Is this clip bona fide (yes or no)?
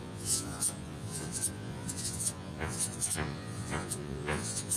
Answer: no